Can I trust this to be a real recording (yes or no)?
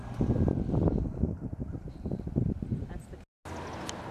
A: yes